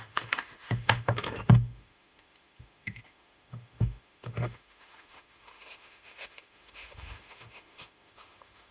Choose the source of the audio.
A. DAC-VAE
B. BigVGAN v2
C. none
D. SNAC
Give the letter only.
A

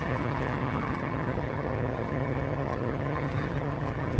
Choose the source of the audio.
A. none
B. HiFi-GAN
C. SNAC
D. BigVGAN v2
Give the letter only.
B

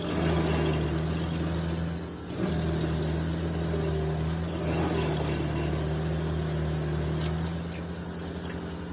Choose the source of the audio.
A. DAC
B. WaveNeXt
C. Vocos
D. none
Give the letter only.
D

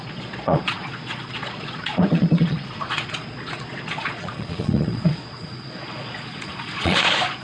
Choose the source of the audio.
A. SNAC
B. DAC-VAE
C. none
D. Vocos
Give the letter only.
D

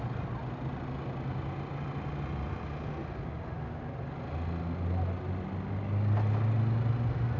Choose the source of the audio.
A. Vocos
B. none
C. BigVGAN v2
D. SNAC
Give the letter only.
B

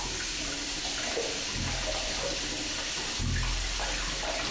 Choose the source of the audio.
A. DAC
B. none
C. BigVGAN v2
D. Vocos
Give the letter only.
B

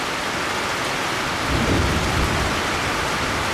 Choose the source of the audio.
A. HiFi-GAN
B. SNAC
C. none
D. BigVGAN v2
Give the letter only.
C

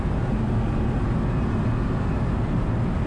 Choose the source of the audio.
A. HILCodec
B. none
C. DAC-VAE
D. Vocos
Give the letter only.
B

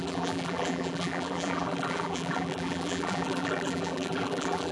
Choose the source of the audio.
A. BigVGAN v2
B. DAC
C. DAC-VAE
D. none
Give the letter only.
A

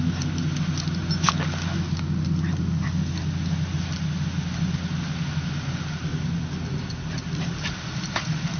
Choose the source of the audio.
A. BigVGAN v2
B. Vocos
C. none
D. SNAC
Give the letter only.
C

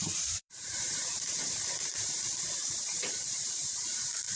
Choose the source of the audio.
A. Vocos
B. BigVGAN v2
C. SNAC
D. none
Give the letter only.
B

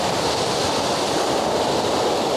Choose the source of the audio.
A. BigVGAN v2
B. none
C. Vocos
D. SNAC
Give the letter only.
B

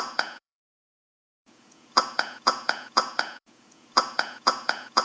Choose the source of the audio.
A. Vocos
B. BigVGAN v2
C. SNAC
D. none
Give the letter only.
A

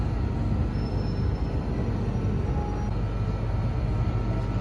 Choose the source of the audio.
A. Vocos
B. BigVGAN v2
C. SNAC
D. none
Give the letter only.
D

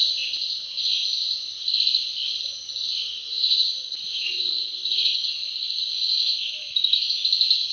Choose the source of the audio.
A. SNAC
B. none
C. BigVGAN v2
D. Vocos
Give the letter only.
B